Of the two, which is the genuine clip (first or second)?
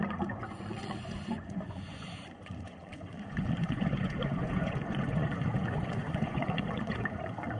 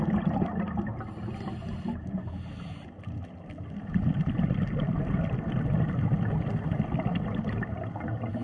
second